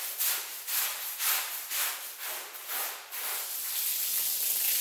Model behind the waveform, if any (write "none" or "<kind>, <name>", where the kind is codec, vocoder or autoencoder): none